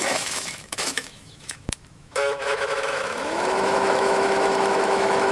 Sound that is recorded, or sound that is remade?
remade